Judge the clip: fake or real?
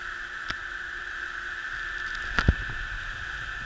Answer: real